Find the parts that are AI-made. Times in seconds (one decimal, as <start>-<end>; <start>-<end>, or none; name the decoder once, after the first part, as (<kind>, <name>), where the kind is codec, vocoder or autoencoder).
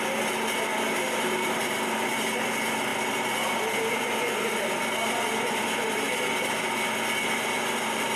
none